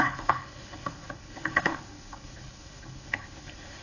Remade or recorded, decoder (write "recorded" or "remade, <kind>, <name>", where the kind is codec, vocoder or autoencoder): remade, codec, HILCodec